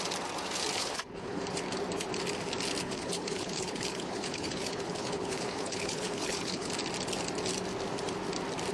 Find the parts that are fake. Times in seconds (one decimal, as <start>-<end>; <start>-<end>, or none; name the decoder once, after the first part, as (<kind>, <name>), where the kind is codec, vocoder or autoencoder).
0.8-1.4 (codec, HILCodec); 2.8-6.7